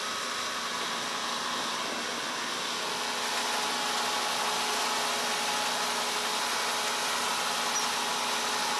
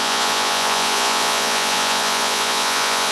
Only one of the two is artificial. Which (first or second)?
second